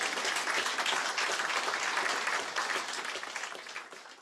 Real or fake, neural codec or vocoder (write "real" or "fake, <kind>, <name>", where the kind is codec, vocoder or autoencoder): real